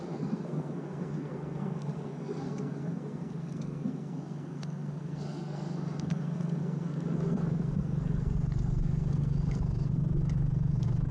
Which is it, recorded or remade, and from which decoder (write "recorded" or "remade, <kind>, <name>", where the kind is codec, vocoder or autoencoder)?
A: remade, codec, SNAC